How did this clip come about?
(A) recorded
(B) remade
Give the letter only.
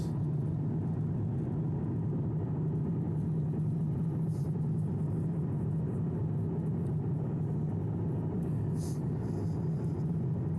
A